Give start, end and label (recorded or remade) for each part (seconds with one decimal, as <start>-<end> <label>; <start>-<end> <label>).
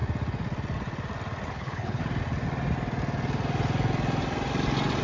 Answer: 0.0-1.5 recorded; 1.5-2.0 remade; 2.0-5.0 recorded